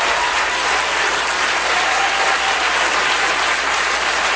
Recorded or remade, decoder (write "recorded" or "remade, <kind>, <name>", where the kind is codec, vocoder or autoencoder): recorded